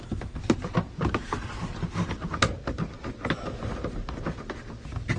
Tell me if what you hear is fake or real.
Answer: real